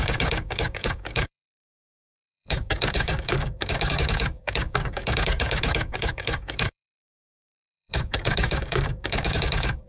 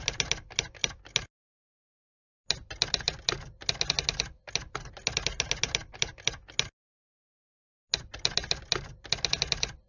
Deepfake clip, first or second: first